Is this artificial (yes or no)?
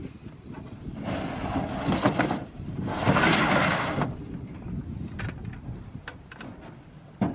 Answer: no